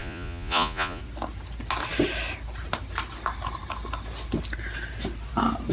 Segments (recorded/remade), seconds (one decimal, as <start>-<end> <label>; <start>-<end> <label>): 0.0-1.0 remade; 1.0-5.7 recorded